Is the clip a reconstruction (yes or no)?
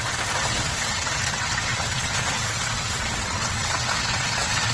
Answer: yes